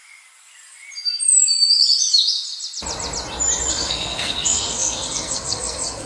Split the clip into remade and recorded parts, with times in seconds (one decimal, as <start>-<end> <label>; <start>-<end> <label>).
0.0-3.7 recorded; 3.7-6.1 remade